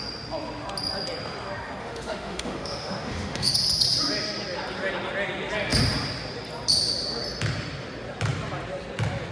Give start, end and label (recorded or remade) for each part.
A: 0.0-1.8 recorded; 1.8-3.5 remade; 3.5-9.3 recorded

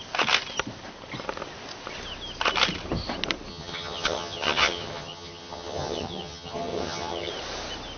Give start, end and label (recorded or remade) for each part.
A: 0.0-3.5 recorded; 3.5-7.3 remade; 7.3-8.0 recorded

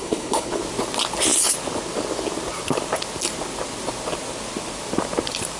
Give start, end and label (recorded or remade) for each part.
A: 0.0-0.6 remade; 0.6-5.6 recorded

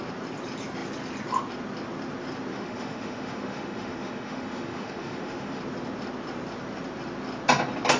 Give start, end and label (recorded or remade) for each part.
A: 0.0-2.5 recorded; 2.5-5.6 remade; 5.6-8.0 recorded

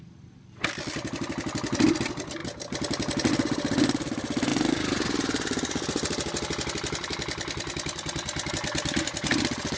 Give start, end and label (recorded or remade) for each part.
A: 0.0-9.8 recorded

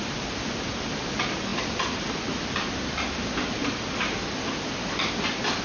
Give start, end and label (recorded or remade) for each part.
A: 0.0-5.6 recorded

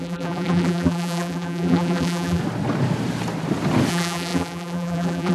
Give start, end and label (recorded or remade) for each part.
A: 0.0-2.4 remade; 2.4-3.9 recorded; 3.9-5.3 remade

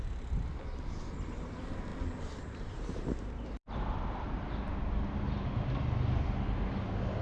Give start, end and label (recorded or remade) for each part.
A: 0.0-1.9 recorded; 1.9-4.9 remade; 4.9-7.2 recorded